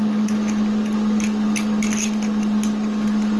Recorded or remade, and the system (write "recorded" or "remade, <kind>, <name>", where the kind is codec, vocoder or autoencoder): recorded